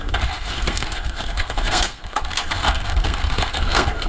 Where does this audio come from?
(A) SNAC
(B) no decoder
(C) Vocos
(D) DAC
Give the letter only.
A